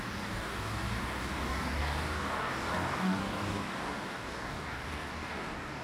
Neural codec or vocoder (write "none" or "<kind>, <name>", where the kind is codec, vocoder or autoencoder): codec, DAC